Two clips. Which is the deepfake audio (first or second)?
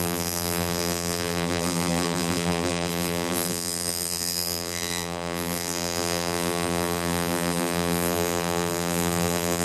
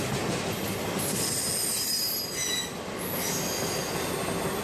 first